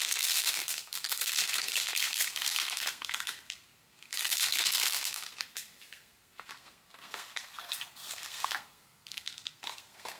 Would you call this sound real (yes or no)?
no